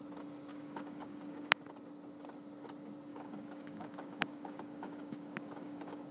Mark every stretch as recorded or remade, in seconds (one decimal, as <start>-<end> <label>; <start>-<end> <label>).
0.0-0.5 recorded; 0.5-1.6 remade; 1.6-3.1 recorded; 3.1-6.1 remade